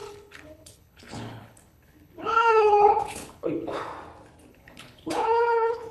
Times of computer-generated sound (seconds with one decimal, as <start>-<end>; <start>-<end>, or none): 0.0-3.9; 4.5-5.9